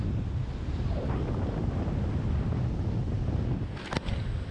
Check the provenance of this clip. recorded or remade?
recorded